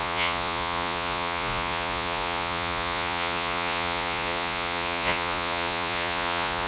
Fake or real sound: fake